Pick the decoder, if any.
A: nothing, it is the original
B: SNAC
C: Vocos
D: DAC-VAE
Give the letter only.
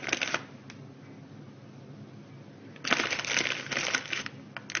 A